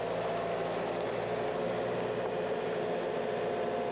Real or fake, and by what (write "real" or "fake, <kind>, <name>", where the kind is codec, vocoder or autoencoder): real